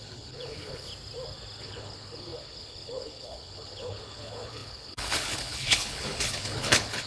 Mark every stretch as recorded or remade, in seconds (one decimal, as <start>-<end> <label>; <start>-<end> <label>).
0.0-0.9 remade; 0.9-1.6 recorded; 1.6-7.1 remade